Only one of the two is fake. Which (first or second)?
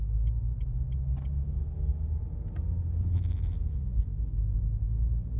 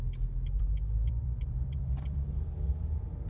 second